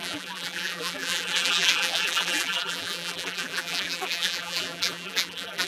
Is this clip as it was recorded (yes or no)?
no